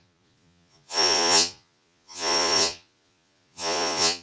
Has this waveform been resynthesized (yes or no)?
yes